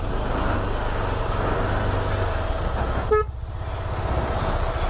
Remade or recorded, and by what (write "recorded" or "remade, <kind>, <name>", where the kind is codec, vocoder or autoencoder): recorded